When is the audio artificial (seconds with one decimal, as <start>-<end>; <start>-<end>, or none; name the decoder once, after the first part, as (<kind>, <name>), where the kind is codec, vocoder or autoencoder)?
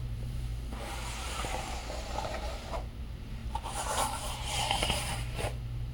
0.0-0.5 (vocoder, BigVGAN v2); 1.2-5.9